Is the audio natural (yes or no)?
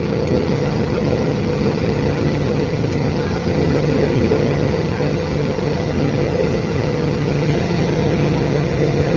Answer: no